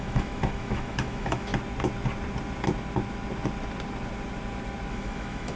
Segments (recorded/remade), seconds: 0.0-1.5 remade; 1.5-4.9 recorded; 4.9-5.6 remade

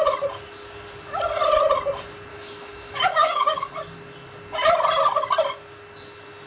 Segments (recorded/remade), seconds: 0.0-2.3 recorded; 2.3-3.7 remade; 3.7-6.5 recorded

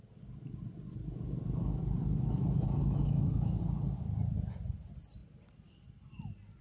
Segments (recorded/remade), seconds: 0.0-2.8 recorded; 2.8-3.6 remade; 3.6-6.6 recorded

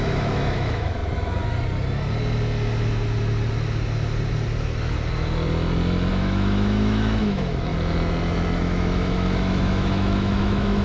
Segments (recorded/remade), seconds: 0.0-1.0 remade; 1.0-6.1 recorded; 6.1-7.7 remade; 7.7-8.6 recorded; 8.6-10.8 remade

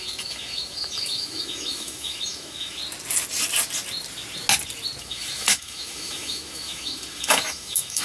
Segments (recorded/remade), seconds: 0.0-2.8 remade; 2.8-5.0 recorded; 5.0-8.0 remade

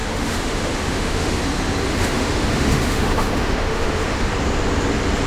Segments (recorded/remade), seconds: 0.0-1.4 remade; 1.4-1.9 recorded; 1.9-4.3 remade; 4.3-5.3 recorded